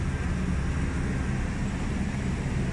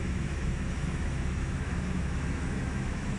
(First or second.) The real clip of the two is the first